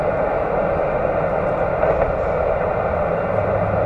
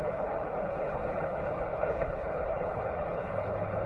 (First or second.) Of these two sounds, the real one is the first